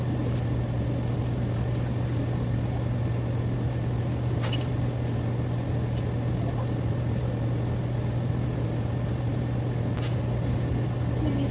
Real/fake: real